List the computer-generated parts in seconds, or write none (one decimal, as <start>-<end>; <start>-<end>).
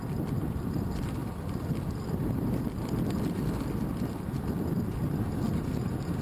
none